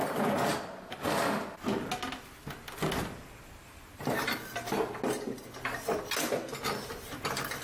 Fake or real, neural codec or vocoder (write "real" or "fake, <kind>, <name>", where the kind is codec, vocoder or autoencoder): real